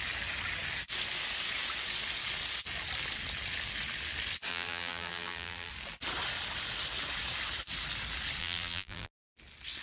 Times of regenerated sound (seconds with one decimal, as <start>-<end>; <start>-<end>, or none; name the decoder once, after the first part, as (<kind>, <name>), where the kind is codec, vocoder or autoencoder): 4.5-5.7 (vocoder, BigVGAN v2); 8.4-9.1